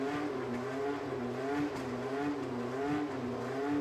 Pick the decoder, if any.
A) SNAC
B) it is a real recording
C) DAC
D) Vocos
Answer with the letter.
B